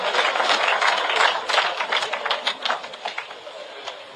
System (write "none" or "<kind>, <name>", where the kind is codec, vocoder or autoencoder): none